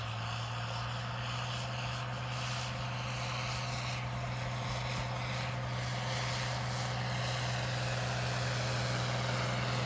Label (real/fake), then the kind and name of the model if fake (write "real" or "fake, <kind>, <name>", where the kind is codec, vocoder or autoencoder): real